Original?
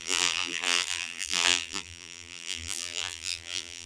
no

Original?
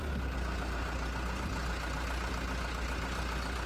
yes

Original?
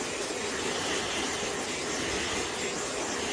yes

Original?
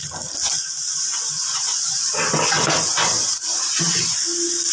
no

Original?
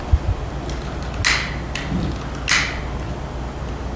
yes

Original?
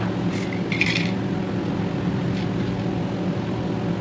yes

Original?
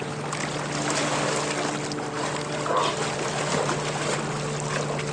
yes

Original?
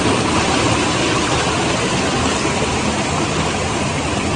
yes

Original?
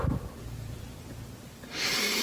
no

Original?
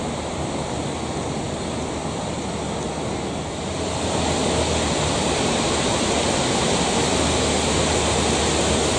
yes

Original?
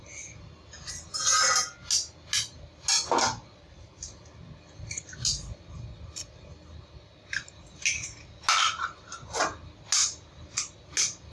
yes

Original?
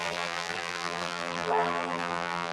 no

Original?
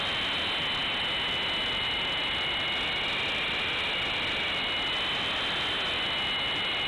yes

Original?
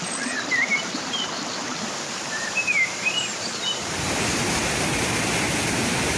no